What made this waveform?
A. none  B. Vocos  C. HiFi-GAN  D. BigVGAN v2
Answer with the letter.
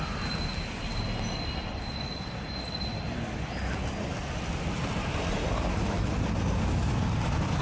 A